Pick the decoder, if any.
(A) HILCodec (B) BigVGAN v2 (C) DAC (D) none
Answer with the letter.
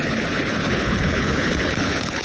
A